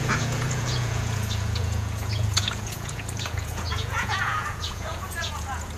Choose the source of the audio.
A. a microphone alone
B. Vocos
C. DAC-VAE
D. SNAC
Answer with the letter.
B